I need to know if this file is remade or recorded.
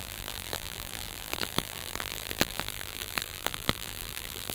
remade